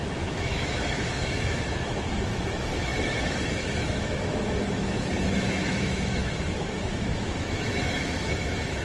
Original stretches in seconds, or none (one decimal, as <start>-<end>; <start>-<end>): none